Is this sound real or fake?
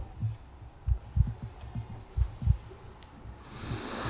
real